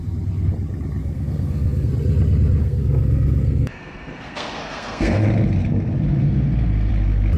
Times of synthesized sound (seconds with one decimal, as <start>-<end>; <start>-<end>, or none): 1.0-1.9; 2.6-5.2; 6.2-6.9